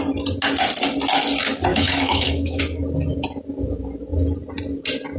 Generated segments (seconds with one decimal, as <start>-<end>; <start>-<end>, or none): 1.7-2.6